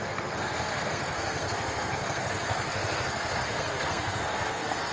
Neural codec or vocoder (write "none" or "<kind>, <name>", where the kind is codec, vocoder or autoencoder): codec, SNAC